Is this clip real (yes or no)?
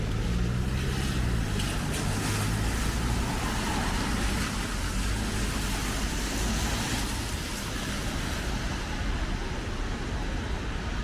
yes